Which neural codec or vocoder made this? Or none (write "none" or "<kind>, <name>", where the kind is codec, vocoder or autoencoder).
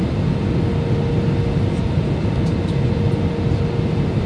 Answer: none